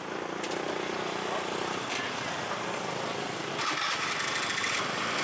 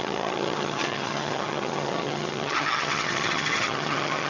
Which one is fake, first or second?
second